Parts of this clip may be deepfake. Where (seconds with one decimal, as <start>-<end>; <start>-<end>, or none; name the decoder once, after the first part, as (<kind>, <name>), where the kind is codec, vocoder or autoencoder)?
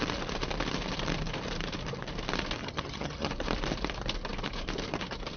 2.6-3.3 (vocoder, HiFi-GAN)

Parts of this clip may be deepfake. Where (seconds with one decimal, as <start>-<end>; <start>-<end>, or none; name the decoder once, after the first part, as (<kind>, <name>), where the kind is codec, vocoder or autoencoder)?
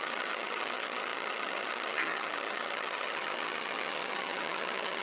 0.0-5.0 (vocoder, HiFi-GAN)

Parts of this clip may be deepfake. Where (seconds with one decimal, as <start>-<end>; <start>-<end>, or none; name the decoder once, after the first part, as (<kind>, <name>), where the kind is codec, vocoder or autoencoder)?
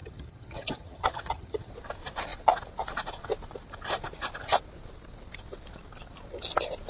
0.0-1.7 (vocoder, HiFi-GAN)